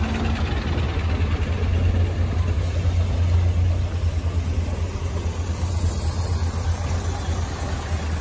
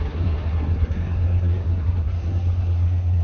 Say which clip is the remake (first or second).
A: second